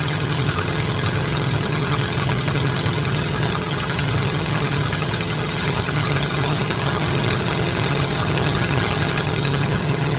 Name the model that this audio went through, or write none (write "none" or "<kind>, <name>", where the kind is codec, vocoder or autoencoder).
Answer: vocoder, HiFi-GAN